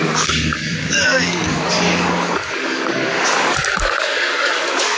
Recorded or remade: remade